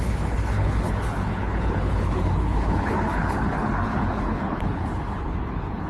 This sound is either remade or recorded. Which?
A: remade